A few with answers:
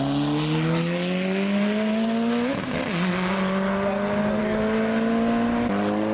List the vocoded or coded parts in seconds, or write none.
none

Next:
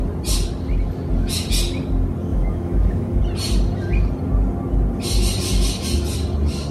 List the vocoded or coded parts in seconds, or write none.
2.3-3.2 (autoencoder, DAC-VAE)